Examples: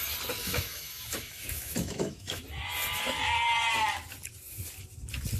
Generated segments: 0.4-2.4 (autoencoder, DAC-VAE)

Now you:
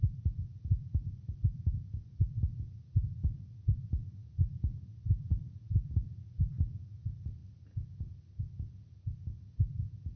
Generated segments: 0.6-2.1 (vocoder, BigVGAN v2)